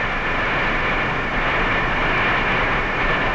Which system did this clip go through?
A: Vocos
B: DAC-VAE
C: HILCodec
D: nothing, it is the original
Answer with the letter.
D